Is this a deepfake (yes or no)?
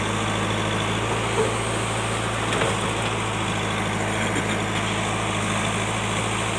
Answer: no